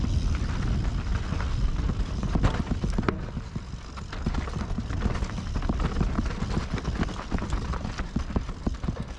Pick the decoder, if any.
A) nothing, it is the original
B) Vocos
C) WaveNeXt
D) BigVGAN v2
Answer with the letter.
A